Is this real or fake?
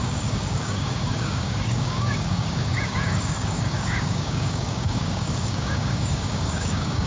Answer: fake